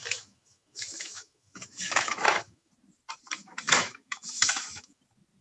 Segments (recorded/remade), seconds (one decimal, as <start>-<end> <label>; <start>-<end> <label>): 0.0-2.7 remade; 2.7-3.4 recorded; 3.4-5.0 remade; 5.0-5.4 recorded